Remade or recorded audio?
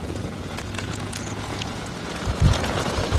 remade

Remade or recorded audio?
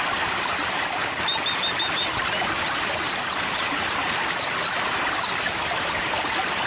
recorded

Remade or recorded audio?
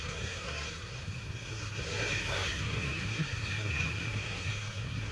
remade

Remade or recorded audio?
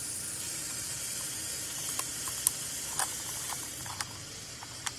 remade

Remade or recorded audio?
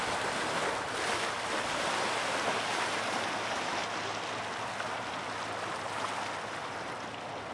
recorded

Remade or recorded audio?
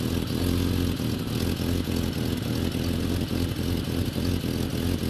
recorded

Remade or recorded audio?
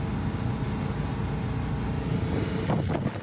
recorded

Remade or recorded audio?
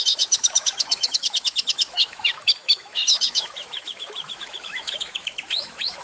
remade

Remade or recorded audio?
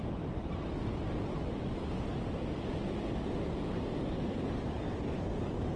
recorded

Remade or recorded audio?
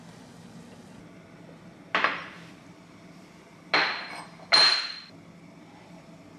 recorded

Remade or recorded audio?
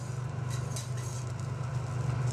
recorded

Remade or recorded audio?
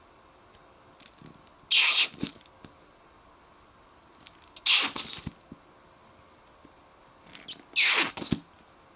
recorded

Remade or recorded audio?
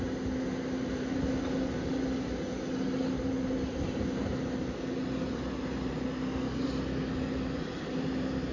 recorded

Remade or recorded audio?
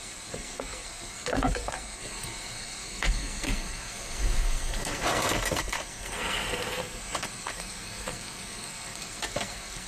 remade